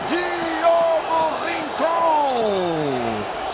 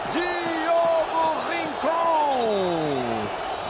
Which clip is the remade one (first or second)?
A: first